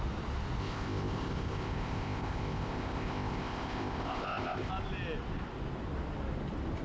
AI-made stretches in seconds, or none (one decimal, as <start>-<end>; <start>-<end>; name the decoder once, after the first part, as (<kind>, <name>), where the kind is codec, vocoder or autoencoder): 0.6-4.7 (codec, ZipCodec)